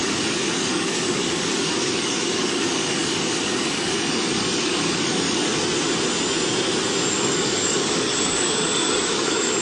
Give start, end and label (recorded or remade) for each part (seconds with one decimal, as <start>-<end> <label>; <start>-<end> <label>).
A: 0.0-5.5 remade; 5.5-7.1 recorded; 7.1-9.6 remade